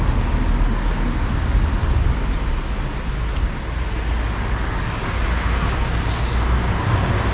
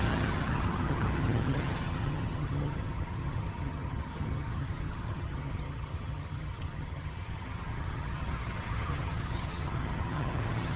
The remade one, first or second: second